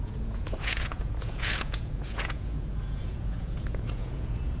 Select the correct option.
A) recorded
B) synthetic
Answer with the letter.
B